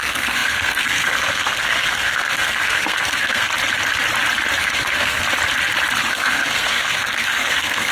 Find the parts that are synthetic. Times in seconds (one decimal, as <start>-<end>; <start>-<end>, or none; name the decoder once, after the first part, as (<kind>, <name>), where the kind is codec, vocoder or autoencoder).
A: 0.0-3.5 (codec, SNAC); 4.6-5.2; 6.1-7.9